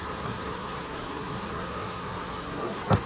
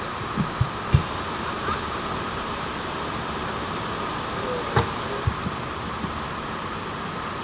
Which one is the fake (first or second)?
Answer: first